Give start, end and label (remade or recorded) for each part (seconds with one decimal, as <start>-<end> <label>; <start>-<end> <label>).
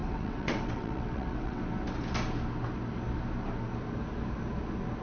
0.0-1.6 remade; 1.6-5.0 recorded